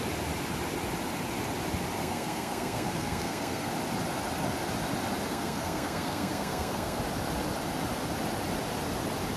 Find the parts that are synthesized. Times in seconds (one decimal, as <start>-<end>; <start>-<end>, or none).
2.0-3.7; 5.3-7.0